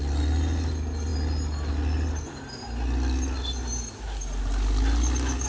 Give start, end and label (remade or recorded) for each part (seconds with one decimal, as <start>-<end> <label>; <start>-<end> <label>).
0.0-5.5 recorded